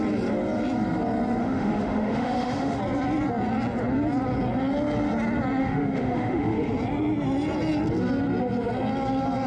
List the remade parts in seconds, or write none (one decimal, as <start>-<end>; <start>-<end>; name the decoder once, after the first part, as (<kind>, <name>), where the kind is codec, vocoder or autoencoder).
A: 1.4-2.8 (autoencoder, DAC-VAE); 5.6-6.7